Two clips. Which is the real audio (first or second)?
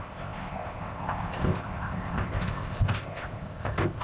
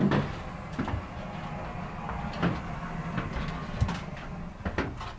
second